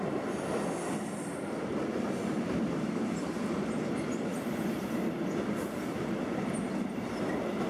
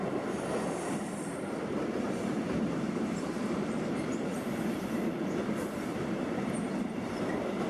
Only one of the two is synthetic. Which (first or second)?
second